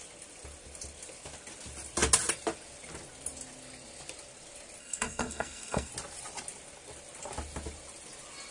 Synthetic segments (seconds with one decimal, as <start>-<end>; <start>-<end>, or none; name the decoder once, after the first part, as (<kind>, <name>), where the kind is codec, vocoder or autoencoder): 4.8-5.9 (codec, SNAC)